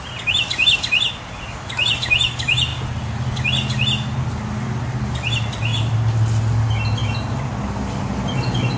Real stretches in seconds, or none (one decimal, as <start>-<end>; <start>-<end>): 0.0-8.8

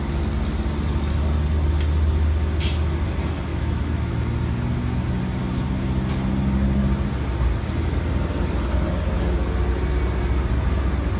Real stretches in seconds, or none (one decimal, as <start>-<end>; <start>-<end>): 0.0-3.5; 4.1-11.2

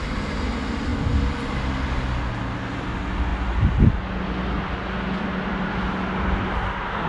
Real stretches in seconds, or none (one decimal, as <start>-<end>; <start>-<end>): 0.0-7.1

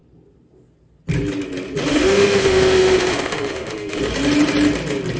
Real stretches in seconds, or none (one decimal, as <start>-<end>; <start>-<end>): 0.0-1.9; 4.0-5.2

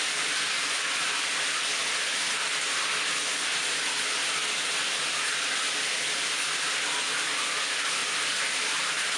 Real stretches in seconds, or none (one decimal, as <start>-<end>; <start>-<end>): 0.0-9.2

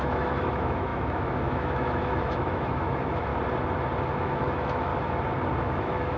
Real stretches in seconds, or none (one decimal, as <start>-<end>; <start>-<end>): 3.3-4.1; 4.9-5.6

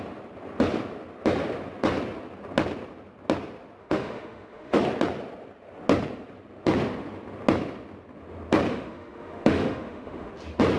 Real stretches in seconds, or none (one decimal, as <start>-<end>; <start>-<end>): 0.0-3.8; 4.8-8.7; 10.3-10.8